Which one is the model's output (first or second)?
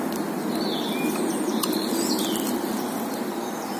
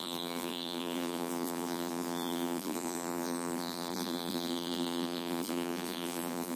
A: second